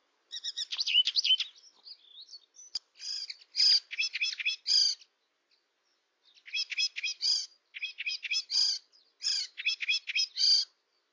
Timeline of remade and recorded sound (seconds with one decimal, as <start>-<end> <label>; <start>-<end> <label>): 0.0-1.3 remade; 1.3-11.1 recorded